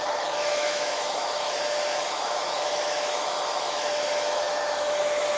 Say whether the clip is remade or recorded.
remade